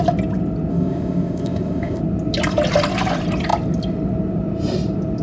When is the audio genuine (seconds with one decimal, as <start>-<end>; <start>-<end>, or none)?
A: 0.0-0.7; 2.0-5.2